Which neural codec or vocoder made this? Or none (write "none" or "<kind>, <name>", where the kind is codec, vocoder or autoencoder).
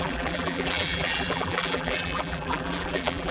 vocoder, BigVGAN v2